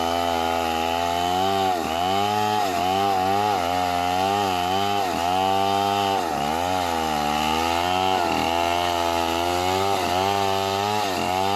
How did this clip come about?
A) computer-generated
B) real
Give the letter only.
B